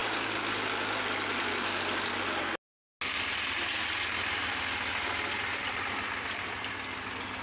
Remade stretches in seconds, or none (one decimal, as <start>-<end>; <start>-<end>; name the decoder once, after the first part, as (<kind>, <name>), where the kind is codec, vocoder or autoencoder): none